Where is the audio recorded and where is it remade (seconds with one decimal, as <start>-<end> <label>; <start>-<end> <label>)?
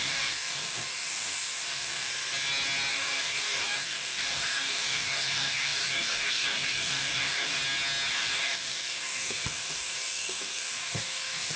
0.0-2.1 remade; 2.1-2.9 recorded; 2.9-7.6 remade; 7.6-8.1 recorded; 8.1-11.6 remade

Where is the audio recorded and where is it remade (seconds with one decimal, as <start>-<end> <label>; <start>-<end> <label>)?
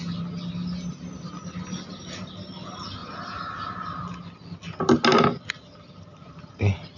0.0-7.0 recorded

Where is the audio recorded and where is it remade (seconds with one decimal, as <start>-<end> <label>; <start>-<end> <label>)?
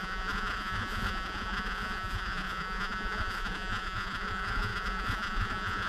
0.0-5.9 remade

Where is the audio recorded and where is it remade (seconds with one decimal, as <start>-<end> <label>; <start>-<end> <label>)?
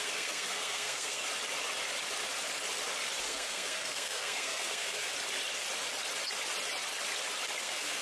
0.0-1.2 remade; 1.2-3.2 recorded; 3.2-5.1 remade; 5.1-7.6 recorded; 7.6-8.0 remade